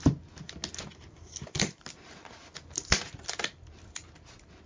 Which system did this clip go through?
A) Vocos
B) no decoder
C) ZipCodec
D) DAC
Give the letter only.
B